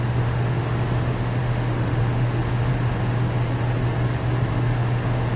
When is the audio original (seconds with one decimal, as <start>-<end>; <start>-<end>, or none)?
2.7-4.5